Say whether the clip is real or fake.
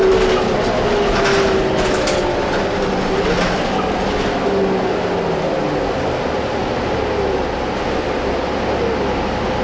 real